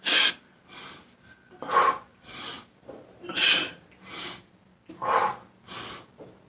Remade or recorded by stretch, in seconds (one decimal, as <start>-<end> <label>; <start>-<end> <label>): 0.0-2.1 recorded; 2.1-4.5 remade; 4.5-6.5 recorded